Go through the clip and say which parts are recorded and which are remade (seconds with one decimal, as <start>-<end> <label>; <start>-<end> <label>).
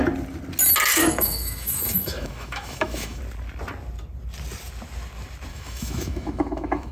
0.0-0.9 recorded; 0.9-3.2 remade; 3.2-5.5 recorded; 5.5-6.9 remade